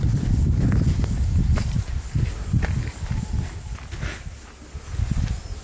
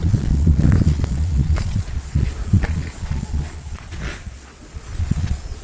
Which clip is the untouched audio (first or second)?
first